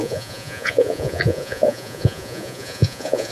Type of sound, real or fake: fake